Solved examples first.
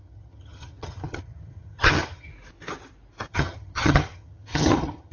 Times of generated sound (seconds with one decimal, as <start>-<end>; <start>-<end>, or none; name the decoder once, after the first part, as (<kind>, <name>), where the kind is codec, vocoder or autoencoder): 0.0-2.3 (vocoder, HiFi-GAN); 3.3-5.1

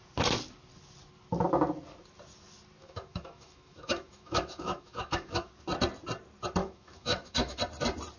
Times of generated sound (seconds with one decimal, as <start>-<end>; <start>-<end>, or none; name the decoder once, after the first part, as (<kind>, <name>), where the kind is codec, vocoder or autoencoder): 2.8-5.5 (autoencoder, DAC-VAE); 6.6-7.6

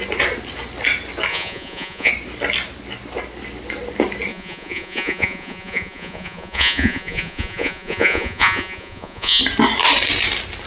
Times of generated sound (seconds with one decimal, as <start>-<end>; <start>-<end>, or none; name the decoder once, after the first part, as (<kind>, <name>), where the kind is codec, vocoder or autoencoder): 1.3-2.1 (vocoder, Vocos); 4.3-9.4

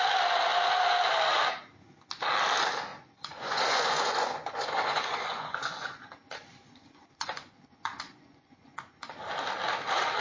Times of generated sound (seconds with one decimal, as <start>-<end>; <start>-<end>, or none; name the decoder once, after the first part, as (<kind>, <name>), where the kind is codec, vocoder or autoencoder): 2.9-6.1 (vocoder, Vocos); 6.5-9.0